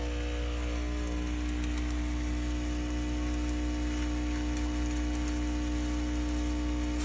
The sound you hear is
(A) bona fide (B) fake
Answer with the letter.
A